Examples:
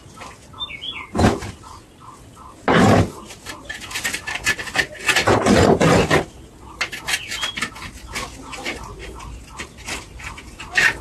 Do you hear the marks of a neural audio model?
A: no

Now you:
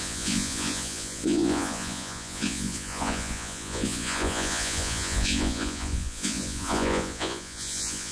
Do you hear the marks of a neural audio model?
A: yes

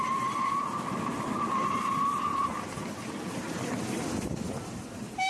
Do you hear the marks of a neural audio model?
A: no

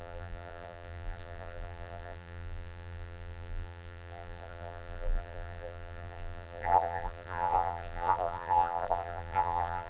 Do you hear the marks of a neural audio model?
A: yes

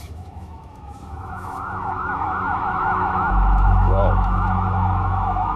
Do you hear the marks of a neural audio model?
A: yes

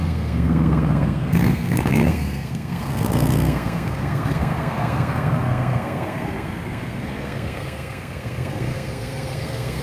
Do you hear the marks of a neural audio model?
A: yes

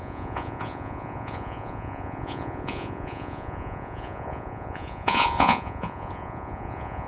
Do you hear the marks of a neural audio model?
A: yes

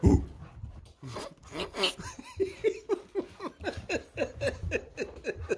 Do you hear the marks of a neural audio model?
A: no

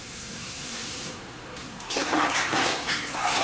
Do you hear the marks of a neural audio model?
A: yes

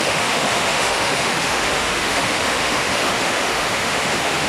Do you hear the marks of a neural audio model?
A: yes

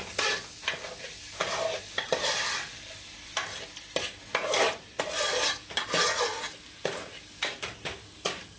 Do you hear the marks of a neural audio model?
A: no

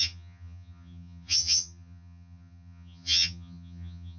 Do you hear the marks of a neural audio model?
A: yes